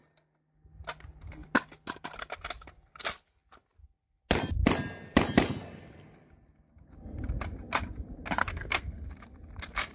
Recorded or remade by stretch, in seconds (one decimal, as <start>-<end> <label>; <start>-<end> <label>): 0.0-8.4 recorded; 8.4-9.1 remade; 9.1-9.9 recorded